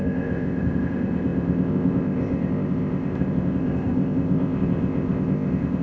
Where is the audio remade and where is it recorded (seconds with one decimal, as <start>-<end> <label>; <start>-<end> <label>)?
0.0-5.8 remade